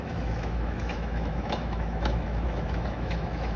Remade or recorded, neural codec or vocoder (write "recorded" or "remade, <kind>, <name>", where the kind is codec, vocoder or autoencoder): remade, autoencoder, DAC-VAE